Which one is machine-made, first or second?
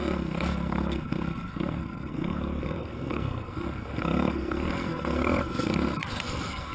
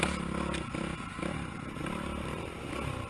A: first